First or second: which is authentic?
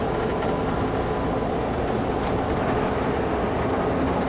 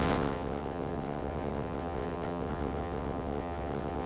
first